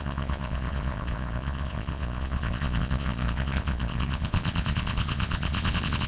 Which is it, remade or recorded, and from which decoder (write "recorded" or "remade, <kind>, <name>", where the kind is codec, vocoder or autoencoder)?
remade, vocoder, Vocos